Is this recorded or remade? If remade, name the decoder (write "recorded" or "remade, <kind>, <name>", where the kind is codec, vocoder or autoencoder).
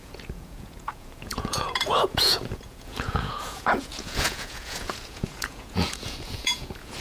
remade, vocoder, Vocos